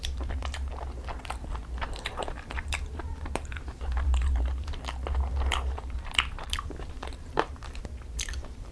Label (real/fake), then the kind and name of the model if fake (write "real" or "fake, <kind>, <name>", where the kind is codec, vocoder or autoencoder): fake, vocoder, BigVGAN v2